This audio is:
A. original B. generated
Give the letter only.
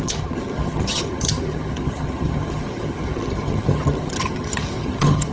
B